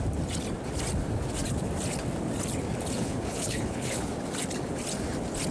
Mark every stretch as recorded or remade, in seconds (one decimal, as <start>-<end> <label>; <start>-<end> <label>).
0.0-3.0 recorded; 3.0-4.1 remade; 4.1-5.5 recorded